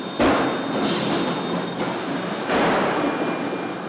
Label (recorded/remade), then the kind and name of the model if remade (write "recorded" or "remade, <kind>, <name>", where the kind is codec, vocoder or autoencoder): recorded